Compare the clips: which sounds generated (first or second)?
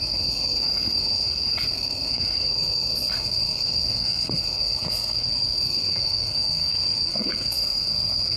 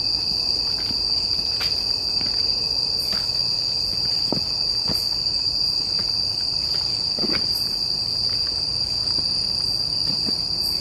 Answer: first